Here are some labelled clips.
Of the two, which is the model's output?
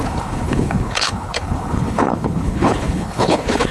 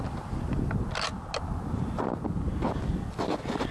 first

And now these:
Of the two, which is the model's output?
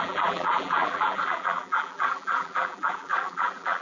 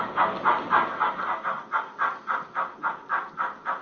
first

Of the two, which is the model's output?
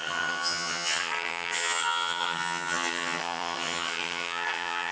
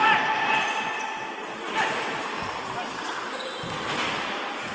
first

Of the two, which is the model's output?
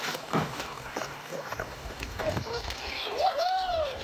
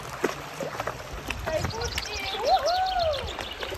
first